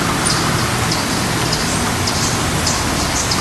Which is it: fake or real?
real